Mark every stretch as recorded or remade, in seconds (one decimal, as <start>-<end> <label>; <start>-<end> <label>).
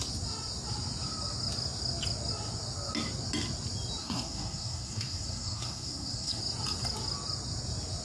0.0-4.0 recorded; 4.0-6.4 remade; 6.4-8.0 recorded